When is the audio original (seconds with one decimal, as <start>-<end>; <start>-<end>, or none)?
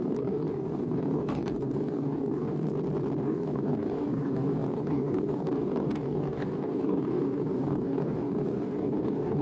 2.7-3.2